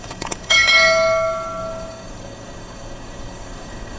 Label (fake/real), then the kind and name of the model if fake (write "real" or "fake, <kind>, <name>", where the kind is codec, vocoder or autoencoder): fake, codec, DAC